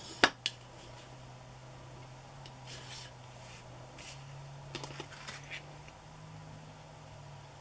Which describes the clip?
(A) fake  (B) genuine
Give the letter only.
B